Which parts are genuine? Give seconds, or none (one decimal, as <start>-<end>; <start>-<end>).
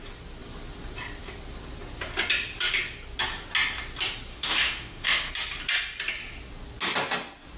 0.0-4.3; 5.3-7.6